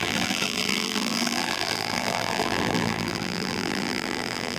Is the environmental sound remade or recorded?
remade